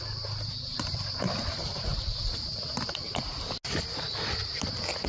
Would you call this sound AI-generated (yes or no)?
no